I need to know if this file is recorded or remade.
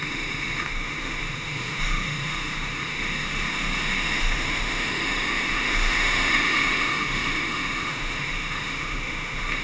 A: remade